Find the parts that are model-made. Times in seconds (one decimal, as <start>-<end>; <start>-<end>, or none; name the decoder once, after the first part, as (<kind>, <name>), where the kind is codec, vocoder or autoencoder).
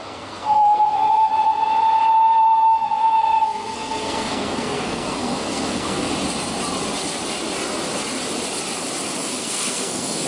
0.0-1.3 (codec, SNAC); 2.7-6.1; 9.2-10.3